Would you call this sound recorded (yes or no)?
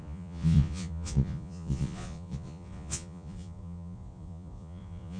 no